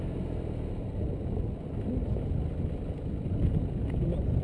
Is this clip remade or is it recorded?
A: recorded